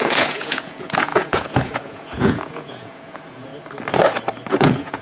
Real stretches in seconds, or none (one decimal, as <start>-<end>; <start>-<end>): 3.5-4.5